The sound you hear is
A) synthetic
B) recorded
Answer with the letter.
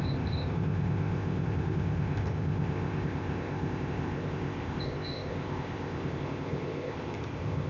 A